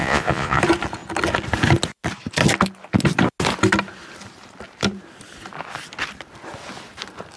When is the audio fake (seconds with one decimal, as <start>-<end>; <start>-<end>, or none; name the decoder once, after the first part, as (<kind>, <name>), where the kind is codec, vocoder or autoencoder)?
0.0-0.6 (vocoder, Vocos)